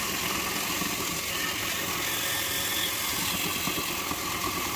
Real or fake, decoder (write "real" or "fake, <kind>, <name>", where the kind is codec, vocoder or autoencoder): real